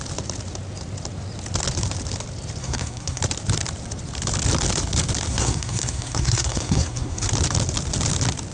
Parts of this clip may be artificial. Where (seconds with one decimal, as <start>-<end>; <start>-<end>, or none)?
2.6-3.2; 5.3-7.3